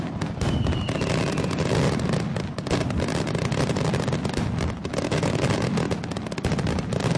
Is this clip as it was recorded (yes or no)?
yes